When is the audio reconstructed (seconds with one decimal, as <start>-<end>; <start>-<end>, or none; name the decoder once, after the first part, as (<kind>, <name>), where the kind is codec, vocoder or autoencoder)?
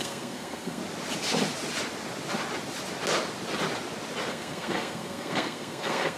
0.0-0.8 (codec, SNAC); 4.3-6.2